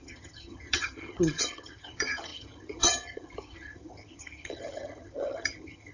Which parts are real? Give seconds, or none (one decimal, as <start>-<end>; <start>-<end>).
none